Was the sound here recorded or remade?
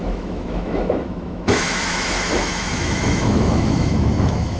remade